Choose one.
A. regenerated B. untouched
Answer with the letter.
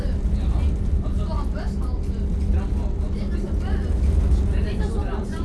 B